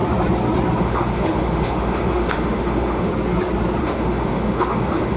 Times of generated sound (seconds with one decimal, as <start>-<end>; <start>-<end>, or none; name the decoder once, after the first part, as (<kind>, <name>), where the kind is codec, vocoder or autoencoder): 0.8-3.1 (autoencoder, DAC-VAE); 3.8-5.2